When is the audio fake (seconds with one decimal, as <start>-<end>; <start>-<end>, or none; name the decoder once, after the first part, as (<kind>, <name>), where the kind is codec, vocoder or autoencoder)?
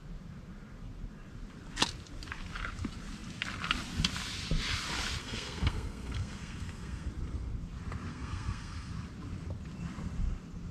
5.2-7.1 (codec, SNAC); 8.1-8.9